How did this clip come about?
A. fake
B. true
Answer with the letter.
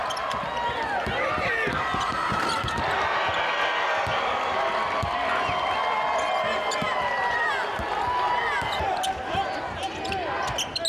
B